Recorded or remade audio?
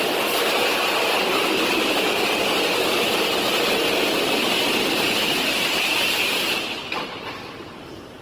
remade